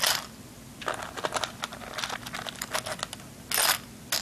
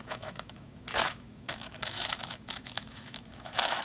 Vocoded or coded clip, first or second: second